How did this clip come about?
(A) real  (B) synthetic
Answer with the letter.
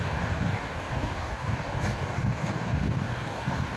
B